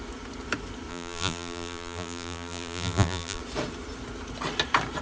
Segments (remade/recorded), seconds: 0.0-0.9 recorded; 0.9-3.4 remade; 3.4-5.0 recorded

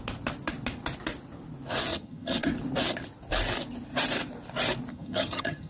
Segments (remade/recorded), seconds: 0.0-1.9 recorded; 1.9-2.5 remade; 2.5-4.9 recorded; 4.9-5.7 remade

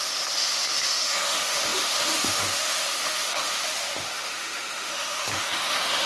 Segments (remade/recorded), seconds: 0.0-6.1 remade

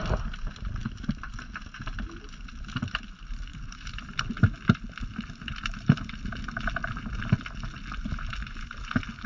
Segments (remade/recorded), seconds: 0.0-3.5 recorded; 3.5-4.8 remade; 4.8-8.0 recorded; 8.0-8.7 remade; 8.7-9.3 recorded

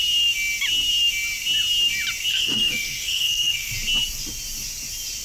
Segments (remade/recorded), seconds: 0.0-2.3 recorded; 2.3-3.7 remade; 3.7-5.2 recorded